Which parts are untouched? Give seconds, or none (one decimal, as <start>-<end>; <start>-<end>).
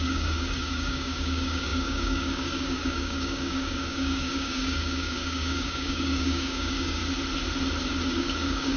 7.0-8.1